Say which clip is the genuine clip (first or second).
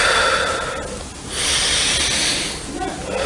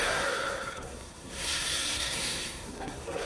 first